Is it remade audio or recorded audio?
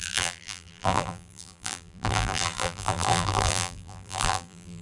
remade